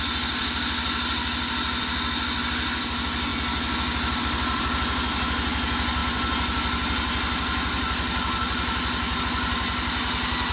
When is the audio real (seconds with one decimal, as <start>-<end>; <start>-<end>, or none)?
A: 0.0-10.5